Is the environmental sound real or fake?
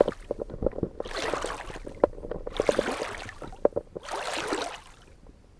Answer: real